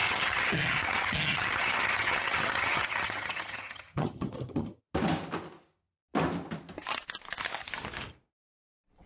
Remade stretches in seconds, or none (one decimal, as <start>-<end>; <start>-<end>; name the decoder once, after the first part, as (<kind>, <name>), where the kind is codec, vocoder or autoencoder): 0.0-4.8 (vocoder, HiFi-GAN)